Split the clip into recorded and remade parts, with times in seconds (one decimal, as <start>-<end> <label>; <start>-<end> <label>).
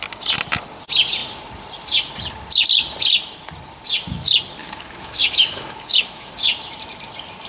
0.0-4.6 recorded; 4.6-6.3 remade; 6.3-7.5 recorded